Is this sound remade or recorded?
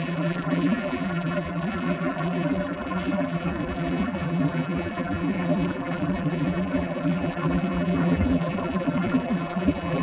remade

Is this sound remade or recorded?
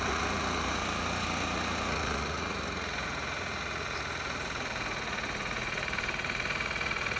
remade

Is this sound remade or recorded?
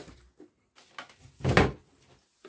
recorded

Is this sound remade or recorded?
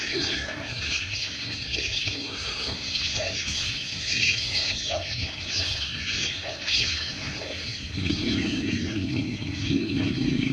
remade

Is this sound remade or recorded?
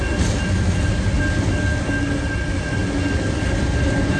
recorded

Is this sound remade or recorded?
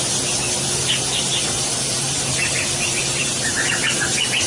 recorded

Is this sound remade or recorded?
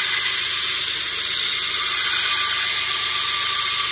recorded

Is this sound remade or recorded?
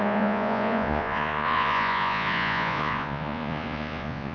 remade